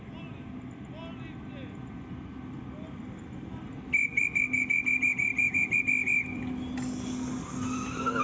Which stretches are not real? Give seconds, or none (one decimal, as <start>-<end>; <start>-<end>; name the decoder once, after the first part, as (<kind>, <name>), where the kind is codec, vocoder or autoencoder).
none

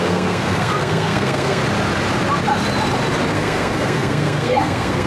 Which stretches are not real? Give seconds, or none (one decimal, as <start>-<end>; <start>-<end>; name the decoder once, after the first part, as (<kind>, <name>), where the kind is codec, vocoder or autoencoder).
0.0-1.6 (codec, SNAC); 3.3-5.1

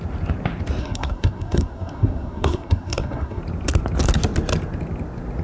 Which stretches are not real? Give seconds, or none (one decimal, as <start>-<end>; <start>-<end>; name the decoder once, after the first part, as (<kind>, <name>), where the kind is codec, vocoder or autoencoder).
0.8-3.4 (codec, SNAC)

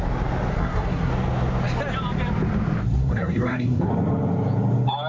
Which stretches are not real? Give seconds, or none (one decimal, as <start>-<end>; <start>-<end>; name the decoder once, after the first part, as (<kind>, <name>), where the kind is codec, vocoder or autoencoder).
0.5-1.1 (codec, SNAC); 3.0-3.9

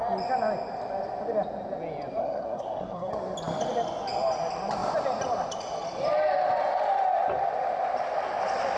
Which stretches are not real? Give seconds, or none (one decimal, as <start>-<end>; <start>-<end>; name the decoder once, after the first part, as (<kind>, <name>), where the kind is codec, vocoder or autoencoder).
2.2-3.1 (codec, SNAC)

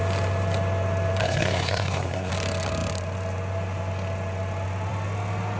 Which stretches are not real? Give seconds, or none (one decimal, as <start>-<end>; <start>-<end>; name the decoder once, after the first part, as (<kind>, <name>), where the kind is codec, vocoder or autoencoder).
1.2-2.3 (codec, SNAC)

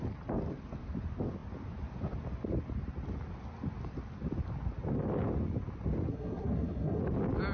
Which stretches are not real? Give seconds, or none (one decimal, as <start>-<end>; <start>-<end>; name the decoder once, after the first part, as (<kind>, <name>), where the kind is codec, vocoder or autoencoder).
6.1-7.0 (codec, SNAC)